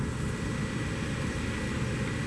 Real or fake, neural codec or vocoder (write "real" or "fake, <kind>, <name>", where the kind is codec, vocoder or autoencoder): real